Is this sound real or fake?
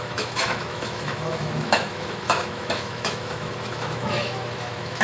fake